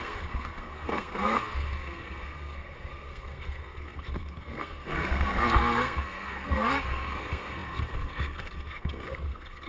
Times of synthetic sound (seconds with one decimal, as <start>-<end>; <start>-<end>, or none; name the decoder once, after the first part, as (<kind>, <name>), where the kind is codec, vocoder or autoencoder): 0.0-9.7 (codec, SNAC)